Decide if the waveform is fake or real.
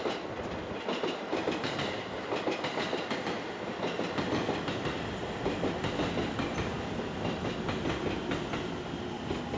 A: real